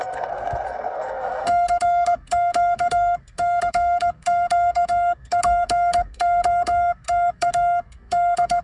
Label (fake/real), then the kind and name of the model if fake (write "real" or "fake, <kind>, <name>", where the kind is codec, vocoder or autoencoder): fake, codec, SNAC